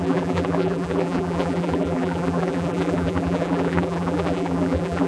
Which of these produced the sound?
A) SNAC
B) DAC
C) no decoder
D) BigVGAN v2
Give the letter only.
D